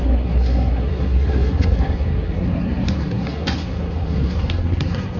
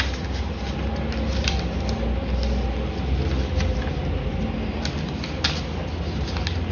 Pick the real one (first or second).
second